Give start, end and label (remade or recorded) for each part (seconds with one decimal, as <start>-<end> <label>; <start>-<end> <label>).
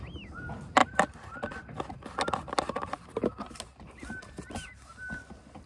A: 0.0-5.7 recorded